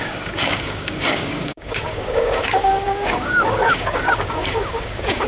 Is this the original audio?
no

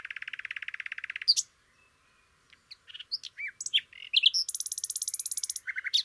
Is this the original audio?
yes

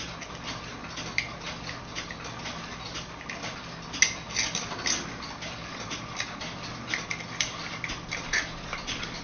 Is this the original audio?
yes